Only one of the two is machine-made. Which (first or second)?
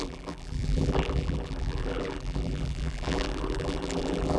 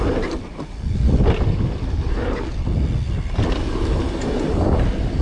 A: first